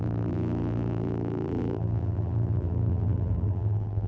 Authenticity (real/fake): fake